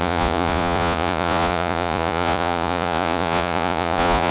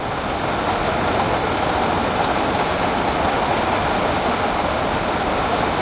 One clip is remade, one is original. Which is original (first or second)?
second